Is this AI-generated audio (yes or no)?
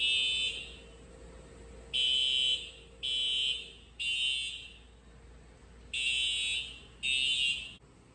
no